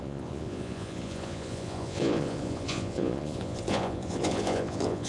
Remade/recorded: remade